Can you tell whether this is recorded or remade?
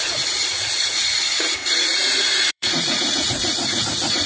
remade